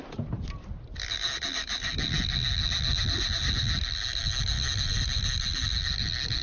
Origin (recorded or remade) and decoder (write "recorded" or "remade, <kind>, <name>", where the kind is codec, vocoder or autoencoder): recorded